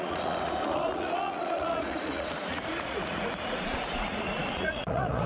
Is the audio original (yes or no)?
no